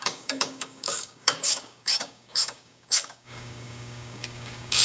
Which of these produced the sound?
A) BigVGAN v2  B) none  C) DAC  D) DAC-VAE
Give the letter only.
C